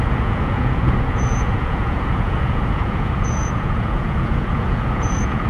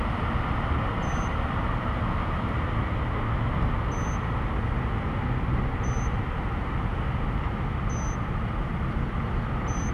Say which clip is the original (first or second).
second